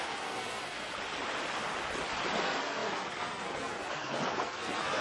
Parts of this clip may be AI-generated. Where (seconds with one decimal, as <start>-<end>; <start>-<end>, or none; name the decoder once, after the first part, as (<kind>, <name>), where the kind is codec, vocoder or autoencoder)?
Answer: 0.0-0.9 (codec, SNAC); 2.4-5.0